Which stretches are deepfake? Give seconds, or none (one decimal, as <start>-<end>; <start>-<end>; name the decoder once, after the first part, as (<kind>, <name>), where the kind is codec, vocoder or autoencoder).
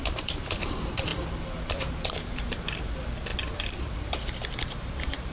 0.0-1.1 (vocoder, BigVGAN v2); 1.7-3.3; 3.8-5.3